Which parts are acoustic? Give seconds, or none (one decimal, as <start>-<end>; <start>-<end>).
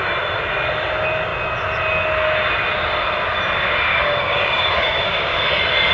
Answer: 0.0-3.9; 5.4-5.9